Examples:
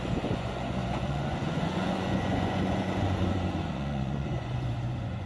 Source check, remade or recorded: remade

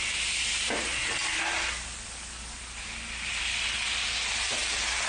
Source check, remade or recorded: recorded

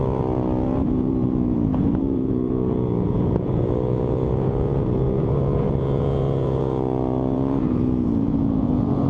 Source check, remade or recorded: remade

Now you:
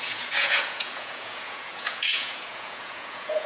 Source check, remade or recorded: remade